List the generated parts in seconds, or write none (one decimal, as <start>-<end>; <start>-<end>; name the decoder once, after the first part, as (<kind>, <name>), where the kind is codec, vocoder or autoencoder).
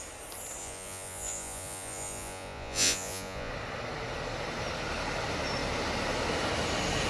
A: 0.6-3.5 (vocoder, Vocos)